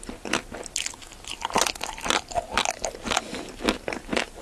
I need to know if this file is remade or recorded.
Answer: recorded